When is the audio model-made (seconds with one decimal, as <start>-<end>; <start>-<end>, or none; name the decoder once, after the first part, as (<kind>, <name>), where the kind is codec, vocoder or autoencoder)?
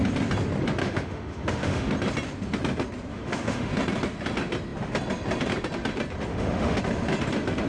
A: 0.8-1.9 (autoencoder, DAC-VAE); 3.1-3.7; 6.3-6.8